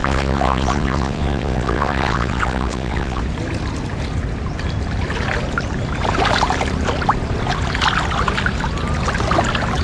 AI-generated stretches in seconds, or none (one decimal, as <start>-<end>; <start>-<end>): 0.0-3.2